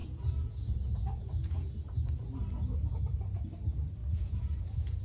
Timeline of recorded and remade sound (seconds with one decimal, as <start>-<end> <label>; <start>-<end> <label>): 0.0-3.0 remade; 3.0-4.0 recorded; 4.0-5.0 remade